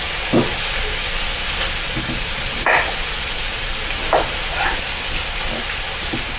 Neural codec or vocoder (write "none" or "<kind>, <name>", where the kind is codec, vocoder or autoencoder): none